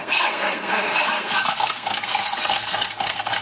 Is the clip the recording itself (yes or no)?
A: no